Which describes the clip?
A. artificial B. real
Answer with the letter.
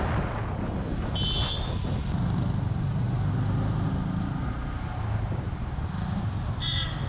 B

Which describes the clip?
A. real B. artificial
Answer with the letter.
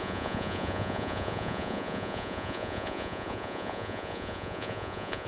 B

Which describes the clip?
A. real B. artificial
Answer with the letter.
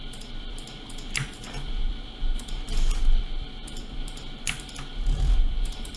B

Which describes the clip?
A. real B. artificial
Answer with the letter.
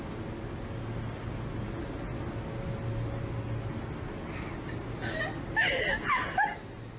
A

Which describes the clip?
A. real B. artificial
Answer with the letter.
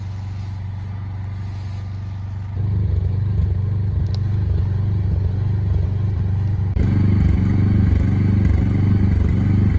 A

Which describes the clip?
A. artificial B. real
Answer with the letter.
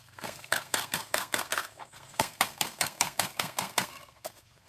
A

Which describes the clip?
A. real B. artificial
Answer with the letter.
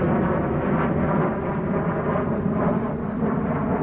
A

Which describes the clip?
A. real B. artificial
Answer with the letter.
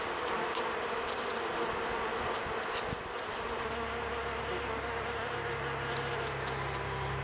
A